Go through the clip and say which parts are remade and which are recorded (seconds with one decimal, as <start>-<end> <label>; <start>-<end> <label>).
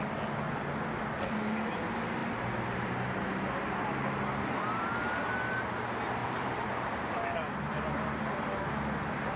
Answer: 0.0-6.2 recorded; 6.2-7.0 remade; 7.0-9.4 recorded